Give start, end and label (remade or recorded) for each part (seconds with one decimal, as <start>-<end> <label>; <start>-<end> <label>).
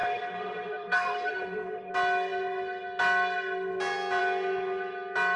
0.0-1.9 remade; 1.9-5.4 recorded